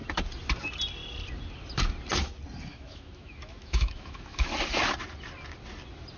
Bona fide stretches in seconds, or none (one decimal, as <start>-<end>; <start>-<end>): 0.0-2.7; 4.5-6.2